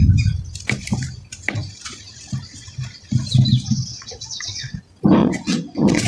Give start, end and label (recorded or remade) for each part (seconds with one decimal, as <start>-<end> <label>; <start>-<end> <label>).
0.0-3.9 recorded; 3.9-4.8 remade; 4.8-5.2 recorded; 5.2-6.1 remade